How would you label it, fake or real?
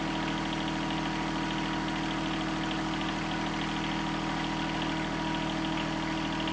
real